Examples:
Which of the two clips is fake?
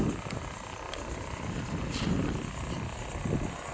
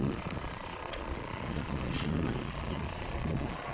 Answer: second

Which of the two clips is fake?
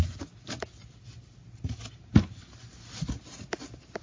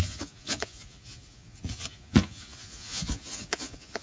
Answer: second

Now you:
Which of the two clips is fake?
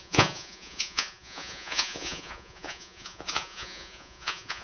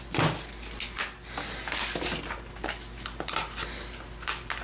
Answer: first